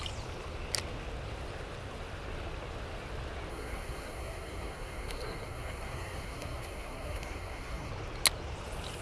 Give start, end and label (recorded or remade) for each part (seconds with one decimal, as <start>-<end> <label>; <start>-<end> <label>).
0.0-3.5 recorded; 3.5-7.9 remade; 7.9-9.0 recorded